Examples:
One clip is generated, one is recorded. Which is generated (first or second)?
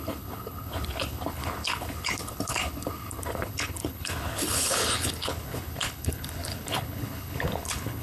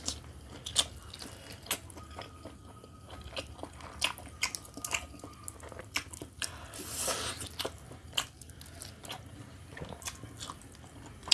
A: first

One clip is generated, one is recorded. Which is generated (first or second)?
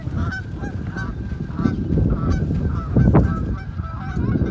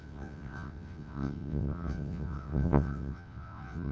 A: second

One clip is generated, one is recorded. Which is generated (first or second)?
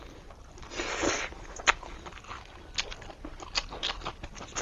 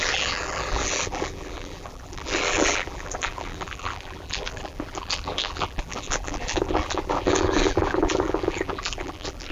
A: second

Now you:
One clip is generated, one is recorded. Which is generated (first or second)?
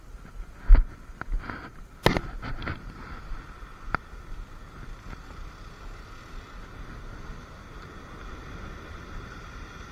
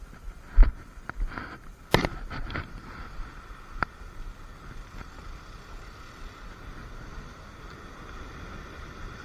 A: second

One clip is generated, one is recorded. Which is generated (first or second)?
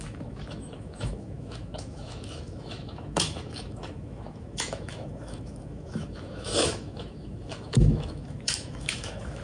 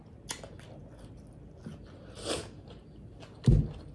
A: first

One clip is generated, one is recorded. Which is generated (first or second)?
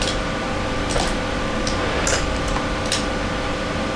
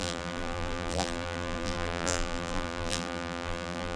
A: second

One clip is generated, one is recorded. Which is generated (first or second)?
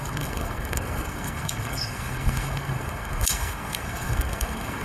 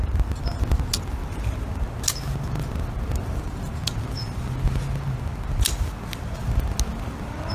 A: first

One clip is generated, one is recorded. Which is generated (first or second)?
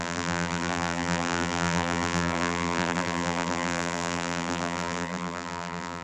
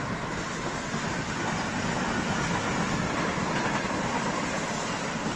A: first